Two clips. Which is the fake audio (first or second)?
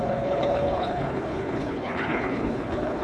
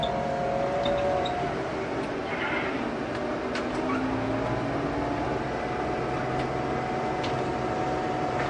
first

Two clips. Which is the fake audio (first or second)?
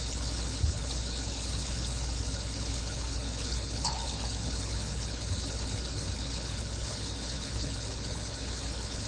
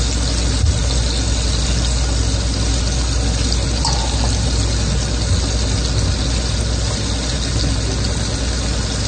first